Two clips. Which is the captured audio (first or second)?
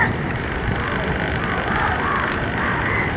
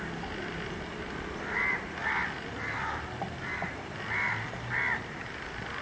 second